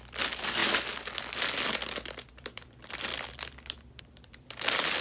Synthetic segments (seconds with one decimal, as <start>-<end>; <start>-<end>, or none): 0.0-0.6; 2.3-3.1; 4.0-5.0